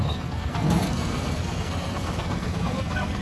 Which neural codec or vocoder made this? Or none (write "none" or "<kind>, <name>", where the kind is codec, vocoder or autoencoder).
codec, SNAC